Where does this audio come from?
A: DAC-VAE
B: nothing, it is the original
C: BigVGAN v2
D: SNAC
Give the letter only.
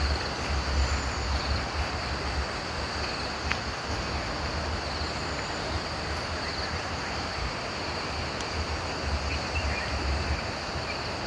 B